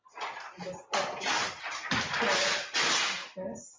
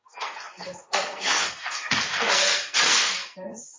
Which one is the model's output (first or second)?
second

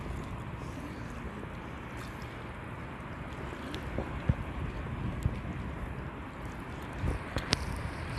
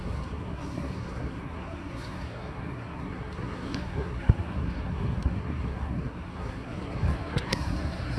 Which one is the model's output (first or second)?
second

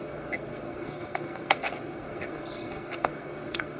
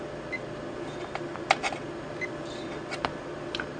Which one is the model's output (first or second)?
first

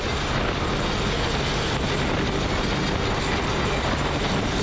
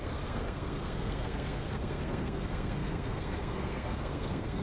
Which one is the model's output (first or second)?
second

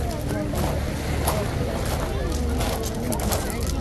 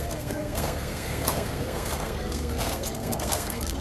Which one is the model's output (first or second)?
second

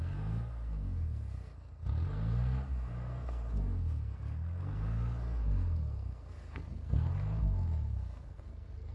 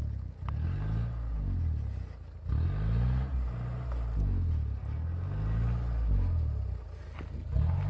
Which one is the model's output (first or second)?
first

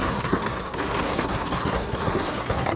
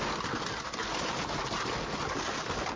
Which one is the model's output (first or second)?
first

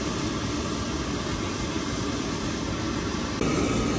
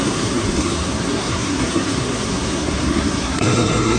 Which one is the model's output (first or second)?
second